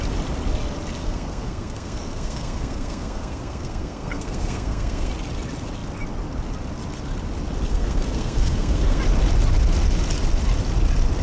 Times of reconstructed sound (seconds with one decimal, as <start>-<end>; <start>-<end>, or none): 1.0-5.1; 7.7-9.0